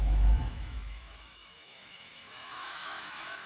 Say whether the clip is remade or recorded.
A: remade